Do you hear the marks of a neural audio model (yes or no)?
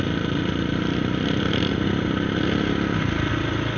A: no